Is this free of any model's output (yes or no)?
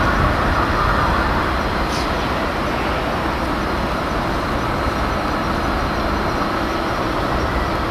yes